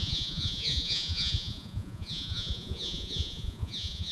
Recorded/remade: remade